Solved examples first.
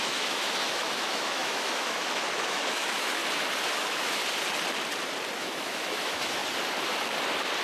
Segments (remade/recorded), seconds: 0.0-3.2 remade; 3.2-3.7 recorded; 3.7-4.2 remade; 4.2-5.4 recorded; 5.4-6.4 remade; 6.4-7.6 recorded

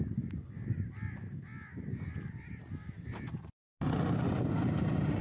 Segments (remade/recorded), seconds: 0.0-5.2 recorded

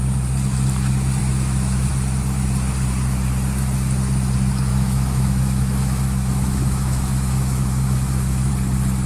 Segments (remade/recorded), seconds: 0.0-1.2 recorded; 1.2-1.9 remade; 1.9-4.7 recorded; 4.7-8.5 remade; 8.5-9.1 recorded

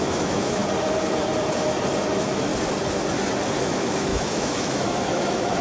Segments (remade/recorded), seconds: 0.0-0.6 remade; 0.6-2.1 recorded; 2.1-2.5 remade; 2.5-3.6 recorded; 3.6-5.6 remade

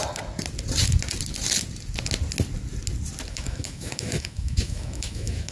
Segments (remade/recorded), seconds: 0.0-3.3 recorded; 3.3-5.5 remade

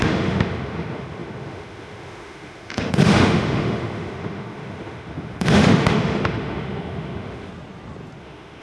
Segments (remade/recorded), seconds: 0.0-7.5 remade; 7.5-8.2 recorded; 8.2-8.6 remade